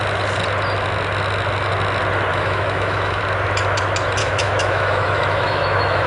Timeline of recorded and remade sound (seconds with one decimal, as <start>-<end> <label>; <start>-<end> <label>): 0.0-2.3 recorded; 2.3-3.2 remade; 3.2-4.2 recorded; 4.2-6.1 remade

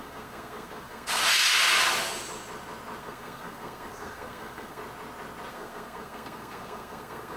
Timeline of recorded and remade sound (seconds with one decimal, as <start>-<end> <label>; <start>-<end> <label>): 0.0-1.2 remade; 1.2-3.0 recorded; 3.0-4.8 remade; 4.8-5.5 recorded; 5.5-7.4 remade